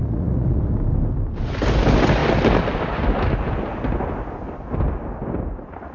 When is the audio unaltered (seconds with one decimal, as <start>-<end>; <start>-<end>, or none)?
0.6-5.9